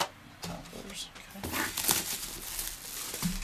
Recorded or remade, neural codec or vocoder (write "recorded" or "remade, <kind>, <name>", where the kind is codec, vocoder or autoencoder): recorded